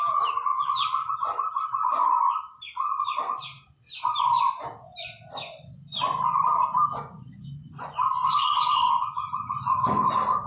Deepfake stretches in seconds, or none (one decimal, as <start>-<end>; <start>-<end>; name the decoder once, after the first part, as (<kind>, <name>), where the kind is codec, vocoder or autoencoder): 0.5-1.1 (vocoder, Vocos); 6.9-8.5

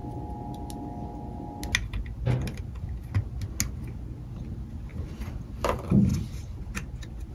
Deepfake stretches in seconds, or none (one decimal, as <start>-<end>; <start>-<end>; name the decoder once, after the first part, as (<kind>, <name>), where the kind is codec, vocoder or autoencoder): none

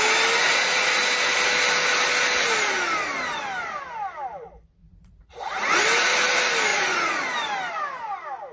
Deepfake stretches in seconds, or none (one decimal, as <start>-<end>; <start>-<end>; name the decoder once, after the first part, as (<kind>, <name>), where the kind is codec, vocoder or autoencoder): 0.4-1.0 (vocoder, Vocos); 4.8-5.8; 6.7-7.2

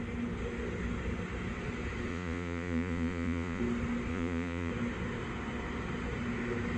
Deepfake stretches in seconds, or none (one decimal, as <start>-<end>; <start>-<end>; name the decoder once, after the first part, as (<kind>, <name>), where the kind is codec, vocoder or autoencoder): 2.1-3.6 (vocoder, Vocos); 4.1-4.7

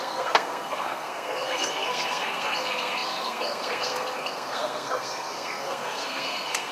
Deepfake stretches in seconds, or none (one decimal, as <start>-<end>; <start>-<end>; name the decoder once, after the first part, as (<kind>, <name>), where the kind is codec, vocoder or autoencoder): 0.0-6.7 (codec, SNAC)

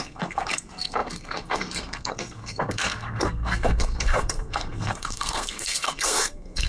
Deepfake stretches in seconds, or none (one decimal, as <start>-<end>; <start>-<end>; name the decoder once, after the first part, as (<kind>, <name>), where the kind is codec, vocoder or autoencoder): 0.0-6.7 (codec, SNAC)

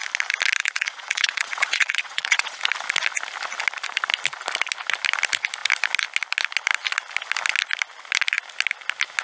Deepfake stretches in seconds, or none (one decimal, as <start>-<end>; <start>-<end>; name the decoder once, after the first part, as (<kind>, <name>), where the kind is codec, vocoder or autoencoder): 0.6-2.6 (vocoder, Vocos)